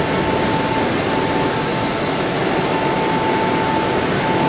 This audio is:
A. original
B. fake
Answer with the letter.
A